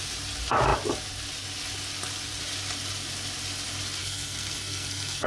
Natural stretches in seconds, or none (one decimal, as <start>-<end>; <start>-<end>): 0.0-4.0